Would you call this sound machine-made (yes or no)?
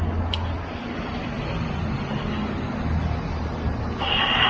no